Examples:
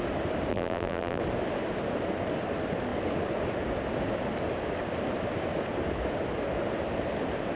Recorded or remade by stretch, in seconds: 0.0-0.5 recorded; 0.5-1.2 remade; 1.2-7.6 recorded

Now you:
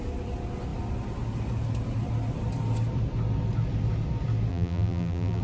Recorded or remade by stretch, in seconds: 0.0-4.5 recorded; 4.5-5.4 remade

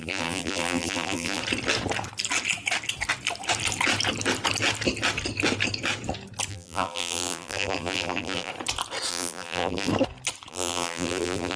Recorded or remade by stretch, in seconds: 0.0-1.4 remade; 1.4-6.5 recorded; 6.5-8.5 remade; 8.5-9.1 recorded; 9.1-9.9 remade; 9.9-10.5 recorded; 10.5-11.6 remade

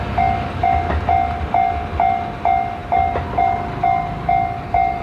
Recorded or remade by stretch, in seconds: 0.0-5.0 recorded

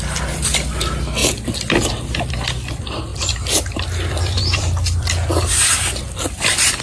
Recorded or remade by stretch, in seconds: 0.0-1.2 remade; 1.2-2.2 recorded; 2.2-3.1 remade; 3.1-4.1 recorded; 4.1-6.8 remade